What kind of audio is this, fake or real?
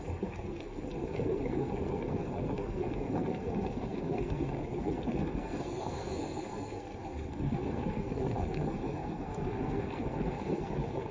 fake